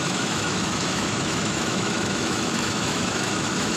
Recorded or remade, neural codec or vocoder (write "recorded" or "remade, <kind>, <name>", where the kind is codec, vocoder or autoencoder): remade, autoencoder, DAC-VAE